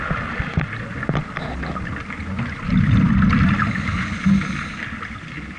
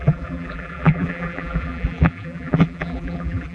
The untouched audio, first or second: first